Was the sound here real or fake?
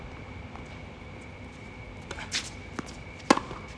real